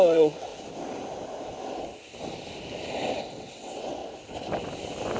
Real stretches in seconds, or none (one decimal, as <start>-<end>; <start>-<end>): 0.5-3.2; 4.0-5.2